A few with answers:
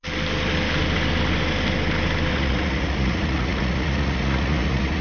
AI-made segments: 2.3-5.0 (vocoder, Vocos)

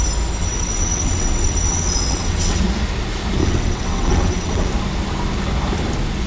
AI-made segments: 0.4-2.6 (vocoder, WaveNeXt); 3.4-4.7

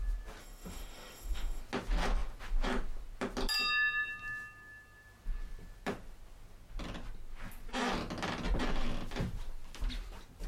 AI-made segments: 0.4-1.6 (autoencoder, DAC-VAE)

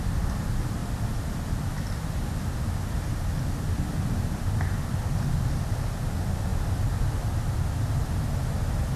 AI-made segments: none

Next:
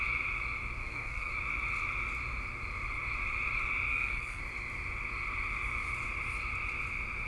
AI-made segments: 0.8-1.3 (codec, SNAC); 3.9-4.4